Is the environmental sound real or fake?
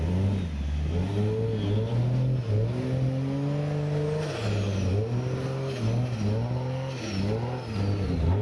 real